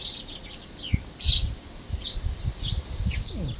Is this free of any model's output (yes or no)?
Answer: yes